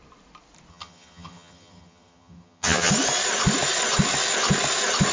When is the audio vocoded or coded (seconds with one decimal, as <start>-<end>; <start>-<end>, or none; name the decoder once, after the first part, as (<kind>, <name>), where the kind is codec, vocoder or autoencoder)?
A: 0.7-2.9 (vocoder, HiFi-GAN)